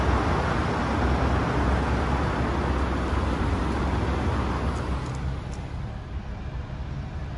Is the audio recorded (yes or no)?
yes